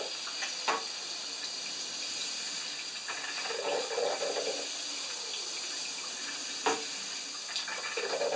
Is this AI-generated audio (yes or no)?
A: no